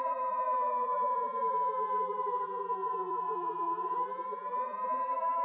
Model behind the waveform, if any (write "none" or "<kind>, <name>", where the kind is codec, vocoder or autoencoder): vocoder, BigVGAN v2